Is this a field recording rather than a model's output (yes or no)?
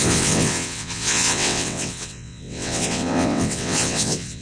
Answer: no